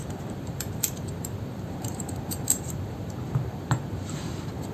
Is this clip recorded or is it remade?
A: remade